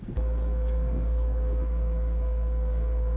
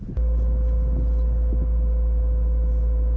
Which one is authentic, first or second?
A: second